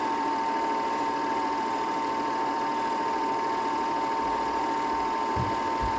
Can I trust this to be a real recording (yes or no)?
no